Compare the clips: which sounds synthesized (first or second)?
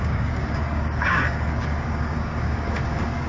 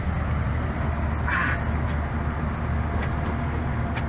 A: first